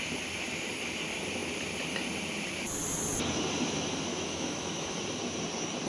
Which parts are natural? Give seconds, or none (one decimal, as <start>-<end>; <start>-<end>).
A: 0.0-4.1; 5.0-5.9